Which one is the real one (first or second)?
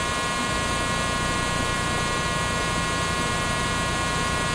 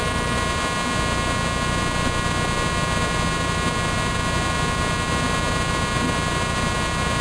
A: second